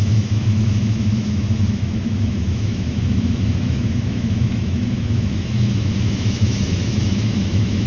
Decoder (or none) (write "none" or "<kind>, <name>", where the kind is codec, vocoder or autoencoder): autoencoder, DAC-VAE